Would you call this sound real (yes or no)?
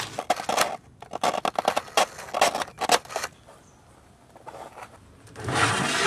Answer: yes